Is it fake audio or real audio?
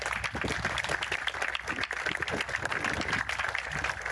real